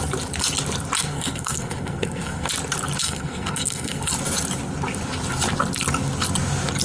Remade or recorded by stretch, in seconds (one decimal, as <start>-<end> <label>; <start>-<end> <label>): 0.0-1.0 recorded; 1.0-2.5 remade; 2.5-3.0 recorded; 3.0-4.1 remade; 4.1-6.8 recorded